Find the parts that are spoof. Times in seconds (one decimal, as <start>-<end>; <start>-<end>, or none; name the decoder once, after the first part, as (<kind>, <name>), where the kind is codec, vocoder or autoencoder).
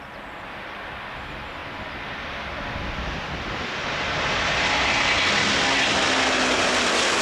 none